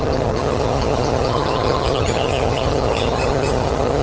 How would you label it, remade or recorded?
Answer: remade